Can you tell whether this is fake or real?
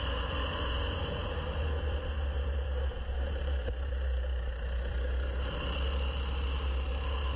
real